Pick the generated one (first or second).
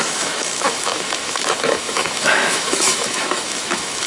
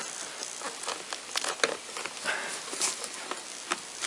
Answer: first